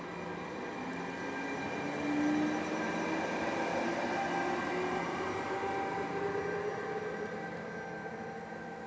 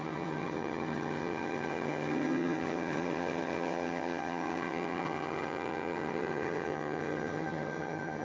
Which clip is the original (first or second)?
first